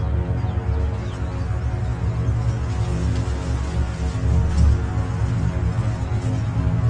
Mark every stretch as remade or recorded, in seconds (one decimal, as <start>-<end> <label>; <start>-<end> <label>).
0.0-6.9 recorded